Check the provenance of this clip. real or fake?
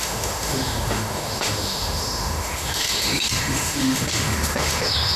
fake